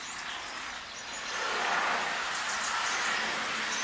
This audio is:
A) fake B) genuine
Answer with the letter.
B